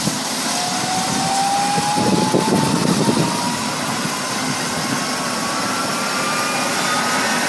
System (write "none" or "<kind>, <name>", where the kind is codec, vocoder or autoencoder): none